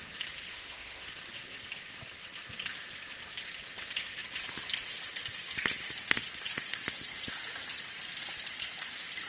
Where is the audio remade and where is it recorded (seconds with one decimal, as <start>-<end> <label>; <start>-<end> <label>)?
0.0-0.5 recorded; 0.5-1.1 remade; 1.1-9.3 recorded